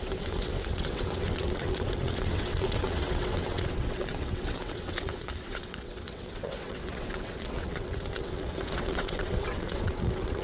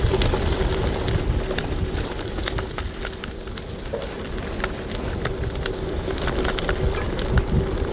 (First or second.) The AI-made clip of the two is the first